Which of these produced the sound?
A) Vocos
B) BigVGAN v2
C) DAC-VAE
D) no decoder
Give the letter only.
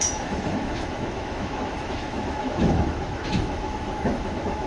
C